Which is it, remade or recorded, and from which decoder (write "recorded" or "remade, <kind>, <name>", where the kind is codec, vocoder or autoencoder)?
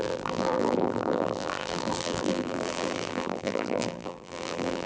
remade, vocoder, BigVGAN v2